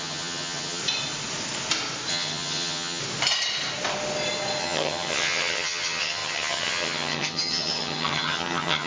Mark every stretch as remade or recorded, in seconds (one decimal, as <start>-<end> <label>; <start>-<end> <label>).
0.0-0.8 remade; 0.8-2.1 recorded; 2.1-3.0 remade; 3.0-4.6 recorded; 4.6-8.9 remade